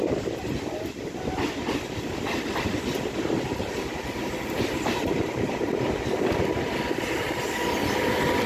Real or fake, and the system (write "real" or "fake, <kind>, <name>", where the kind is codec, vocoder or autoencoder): real